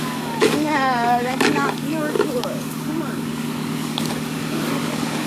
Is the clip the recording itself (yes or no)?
no